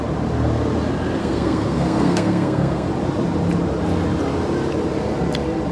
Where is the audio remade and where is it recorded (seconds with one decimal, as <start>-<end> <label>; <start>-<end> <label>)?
0.0-1.2 recorded; 1.2-2.9 remade; 2.9-5.7 recorded

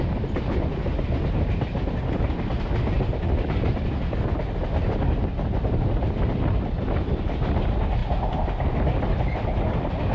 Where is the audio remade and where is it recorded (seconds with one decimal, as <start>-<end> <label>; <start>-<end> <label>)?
0.0-10.1 recorded

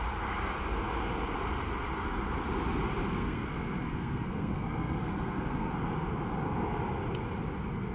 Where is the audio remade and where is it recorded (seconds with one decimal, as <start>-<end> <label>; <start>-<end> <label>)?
0.0-3.1 recorded; 3.1-5.7 remade; 5.7-7.9 recorded

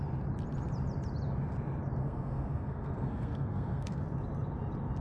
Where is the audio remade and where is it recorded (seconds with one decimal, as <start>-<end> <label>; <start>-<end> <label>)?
0.0-2.0 recorded; 2.0-4.0 remade; 4.0-5.0 recorded

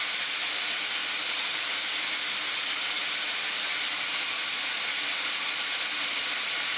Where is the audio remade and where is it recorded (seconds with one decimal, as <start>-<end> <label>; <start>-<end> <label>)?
0.0-6.8 recorded

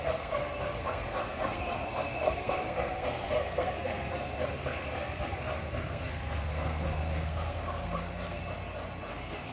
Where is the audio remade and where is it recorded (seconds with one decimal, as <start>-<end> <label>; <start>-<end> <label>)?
0.0-8.4 remade; 8.4-9.1 recorded; 9.1-9.5 remade